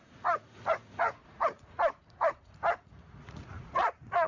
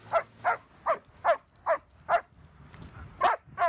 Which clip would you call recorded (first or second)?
second